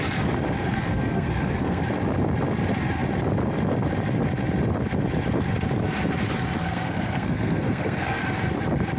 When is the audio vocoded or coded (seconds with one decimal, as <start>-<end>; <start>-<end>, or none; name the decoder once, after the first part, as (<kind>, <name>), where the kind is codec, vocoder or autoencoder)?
0.6-1.8 (codec, SNAC); 6.6-8.2